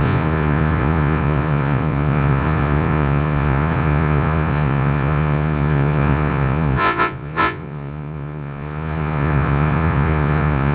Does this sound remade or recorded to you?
remade